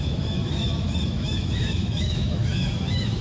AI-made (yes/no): yes